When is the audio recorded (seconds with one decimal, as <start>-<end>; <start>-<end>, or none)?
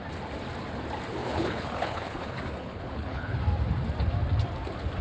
0.0-1.2; 3.4-5.0